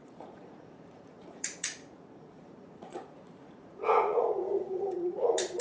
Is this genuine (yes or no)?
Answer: no